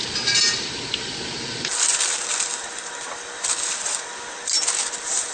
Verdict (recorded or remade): recorded